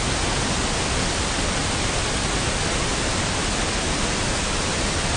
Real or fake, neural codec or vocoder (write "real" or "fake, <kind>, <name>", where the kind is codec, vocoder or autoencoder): real